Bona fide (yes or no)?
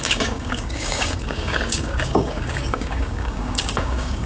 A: no